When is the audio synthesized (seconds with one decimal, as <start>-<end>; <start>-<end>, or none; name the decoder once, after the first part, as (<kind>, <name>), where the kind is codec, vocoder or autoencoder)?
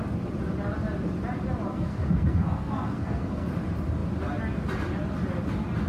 1.7-3.5 (codec, SNAC)